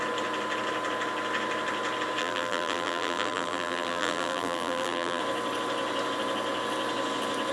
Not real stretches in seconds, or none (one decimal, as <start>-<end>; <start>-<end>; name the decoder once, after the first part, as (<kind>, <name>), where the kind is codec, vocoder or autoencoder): 2.2-5.2 (vocoder, BigVGAN v2)